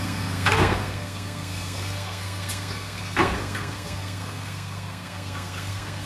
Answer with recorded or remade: remade